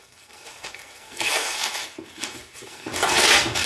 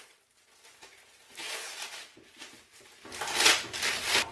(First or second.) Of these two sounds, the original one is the second